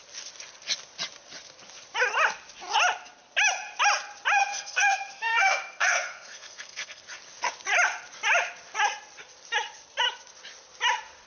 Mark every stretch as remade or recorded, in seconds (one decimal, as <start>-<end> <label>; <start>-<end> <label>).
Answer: 0.0-4.5 recorded; 4.5-7.0 remade; 7.0-11.3 recorded